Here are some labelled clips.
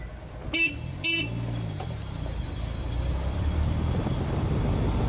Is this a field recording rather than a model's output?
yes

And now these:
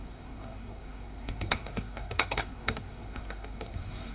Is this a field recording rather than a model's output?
no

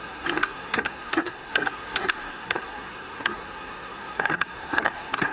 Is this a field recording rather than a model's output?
no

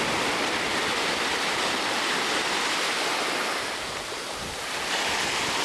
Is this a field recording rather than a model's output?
yes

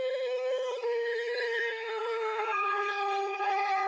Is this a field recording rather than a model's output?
no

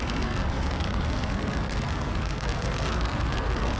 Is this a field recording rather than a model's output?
no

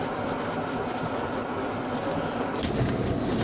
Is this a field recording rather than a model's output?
yes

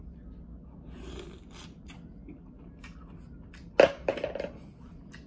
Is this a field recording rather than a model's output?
yes